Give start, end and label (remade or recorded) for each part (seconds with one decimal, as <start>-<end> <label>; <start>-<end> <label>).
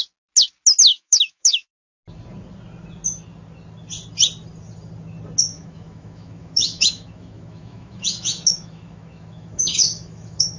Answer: 0.0-0.9 recorded; 0.9-1.7 remade; 1.7-5.5 recorded; 5.5-10.6 remade